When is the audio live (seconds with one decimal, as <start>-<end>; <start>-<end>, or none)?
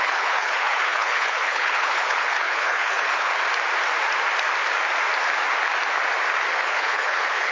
3.3-6.5